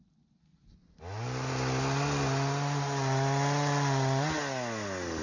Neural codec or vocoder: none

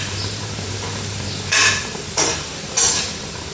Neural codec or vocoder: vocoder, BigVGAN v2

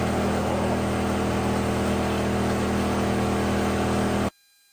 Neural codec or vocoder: none